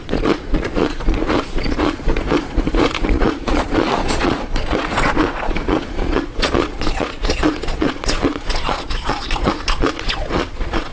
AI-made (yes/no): yes